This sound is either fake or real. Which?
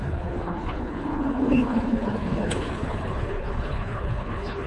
fake